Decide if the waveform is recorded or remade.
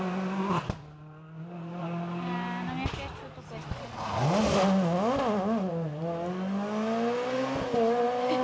recorded